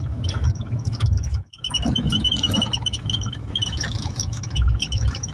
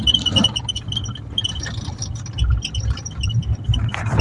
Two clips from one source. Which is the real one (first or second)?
second